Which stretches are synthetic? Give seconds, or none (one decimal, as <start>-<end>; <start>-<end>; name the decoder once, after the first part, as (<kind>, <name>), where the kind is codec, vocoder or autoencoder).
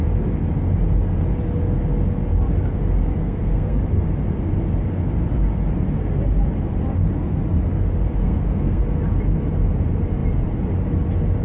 3.2-3.8 (codec, SNAC); 8.2-8.8